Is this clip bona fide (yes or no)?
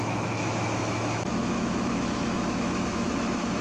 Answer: no